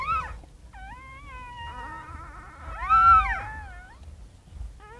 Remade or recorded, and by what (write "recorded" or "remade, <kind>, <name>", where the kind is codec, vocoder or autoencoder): recorded